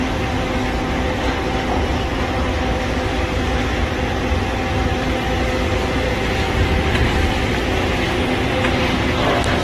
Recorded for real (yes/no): yes